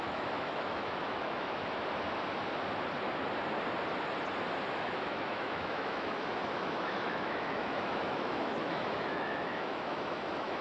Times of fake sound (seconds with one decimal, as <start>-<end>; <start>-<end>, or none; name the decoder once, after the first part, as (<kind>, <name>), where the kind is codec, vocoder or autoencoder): 0.0-1.8 (autoencoder, DAC-VAE); 4.7-10.6